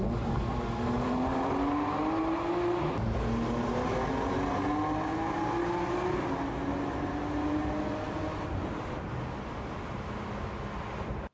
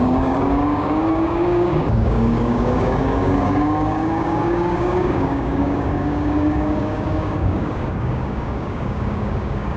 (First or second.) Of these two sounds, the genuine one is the first